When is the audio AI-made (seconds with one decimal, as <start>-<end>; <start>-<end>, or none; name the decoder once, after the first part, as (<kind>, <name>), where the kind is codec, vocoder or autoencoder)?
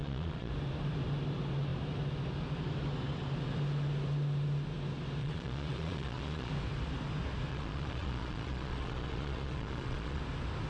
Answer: 0.0-0.5 (vocoder, Vocos); 5.2-6.5; 7.5-10.2